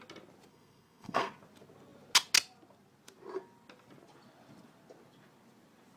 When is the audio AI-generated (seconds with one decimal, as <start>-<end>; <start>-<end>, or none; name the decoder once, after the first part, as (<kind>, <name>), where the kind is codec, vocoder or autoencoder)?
0.5-1.3 (codec, SNAC)